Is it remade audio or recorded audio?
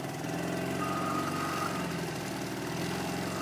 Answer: recorded